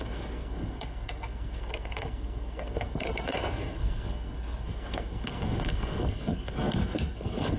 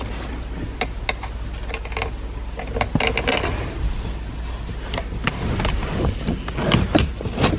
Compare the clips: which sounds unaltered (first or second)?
second